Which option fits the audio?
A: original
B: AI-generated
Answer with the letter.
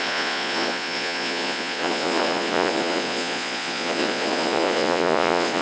B